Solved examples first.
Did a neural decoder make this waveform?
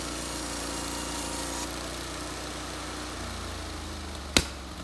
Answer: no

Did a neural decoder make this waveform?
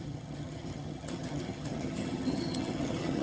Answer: yes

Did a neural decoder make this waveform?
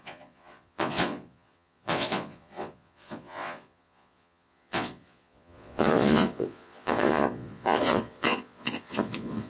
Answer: yes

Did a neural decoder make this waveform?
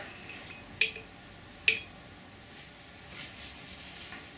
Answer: no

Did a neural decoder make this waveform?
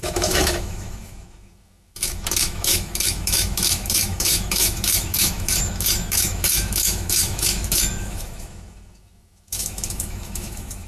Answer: yes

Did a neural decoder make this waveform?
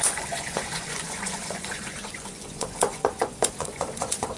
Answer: yes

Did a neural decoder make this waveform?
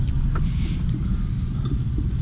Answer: no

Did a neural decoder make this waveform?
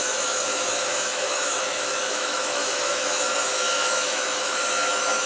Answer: yes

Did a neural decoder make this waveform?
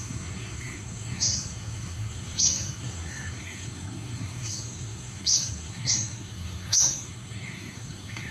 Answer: yes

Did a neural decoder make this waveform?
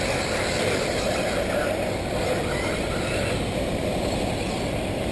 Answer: no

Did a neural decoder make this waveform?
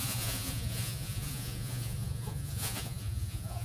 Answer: yes